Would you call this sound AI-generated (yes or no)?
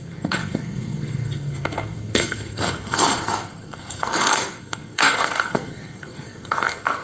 yes